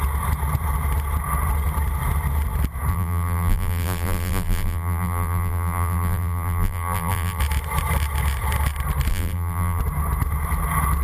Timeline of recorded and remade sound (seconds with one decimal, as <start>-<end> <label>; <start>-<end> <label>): 0.0-2.9 recorded; 2.9-7.4 remade; 7.4-9.1 recorded; 9.1-9.8 remade; 9.8-11.0 recorded